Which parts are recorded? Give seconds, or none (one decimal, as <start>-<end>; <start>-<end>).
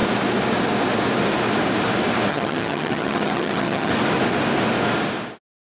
0.0-2.3; 3.9-5.6